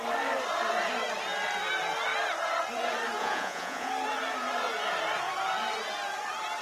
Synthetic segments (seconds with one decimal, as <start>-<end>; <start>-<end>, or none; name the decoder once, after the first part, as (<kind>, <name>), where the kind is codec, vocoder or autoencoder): 3.2-3.9 (vocoder, Vocos)